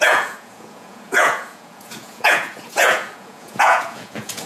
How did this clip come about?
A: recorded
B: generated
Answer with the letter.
B